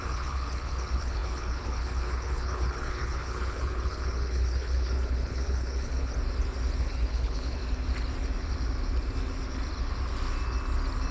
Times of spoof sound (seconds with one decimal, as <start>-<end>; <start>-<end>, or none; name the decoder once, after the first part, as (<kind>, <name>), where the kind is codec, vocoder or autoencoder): 0.0-6.1 (codec, HILCodec); 6.8-7.6